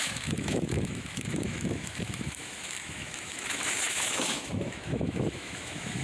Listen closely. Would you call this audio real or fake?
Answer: fake